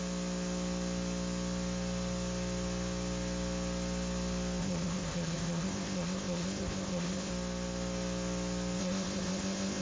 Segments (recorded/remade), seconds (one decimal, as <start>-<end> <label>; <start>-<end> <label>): 0.0-4.6 recorded; 4.6-7.3 remade; 7.3-8.8 recorded; 8.8-9.8 remade

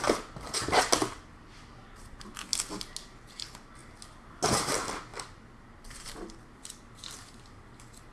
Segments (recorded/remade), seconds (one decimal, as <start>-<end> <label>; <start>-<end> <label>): 0.0-8.1 recorded

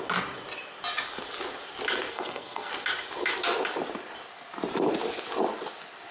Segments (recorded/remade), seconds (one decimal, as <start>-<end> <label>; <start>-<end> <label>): 0.0-2.1 recorded; 2.1-2.7 remade; 2.7-6.1 recorded

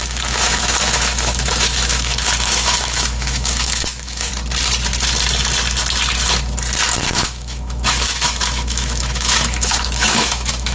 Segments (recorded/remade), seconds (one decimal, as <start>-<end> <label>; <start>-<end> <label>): 0.0-4.3 remade; 4.3-7.0 recorded; 7.0-10.7 remade

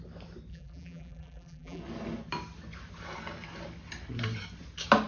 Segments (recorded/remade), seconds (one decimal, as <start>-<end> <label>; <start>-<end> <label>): 0.0-0.5 recorded; 0.5-1.8 remade; 1.8-5.1 recorded

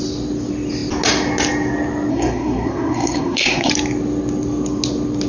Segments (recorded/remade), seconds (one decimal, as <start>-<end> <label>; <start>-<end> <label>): 0.0-2.1 recorded; 2.1-3.7 remade; 3.7-5.3 recorded

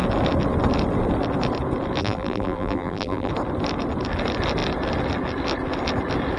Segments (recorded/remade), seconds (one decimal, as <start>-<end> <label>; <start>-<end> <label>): 0.0-2.0 recorded; 2.0-3.3 remade; 3.3-6.4 recorded

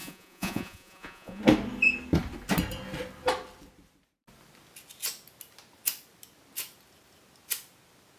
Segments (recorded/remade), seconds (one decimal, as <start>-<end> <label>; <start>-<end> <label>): 0.0-1.4 remade; 1.4-8.2 recorded